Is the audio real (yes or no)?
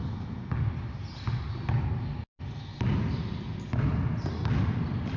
yes